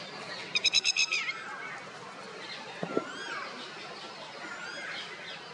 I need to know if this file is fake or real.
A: real